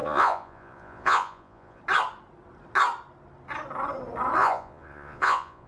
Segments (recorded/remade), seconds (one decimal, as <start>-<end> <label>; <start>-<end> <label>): 0.0-1.8 remade; 1.8-4.4 recorded; 4.4-5.7 remade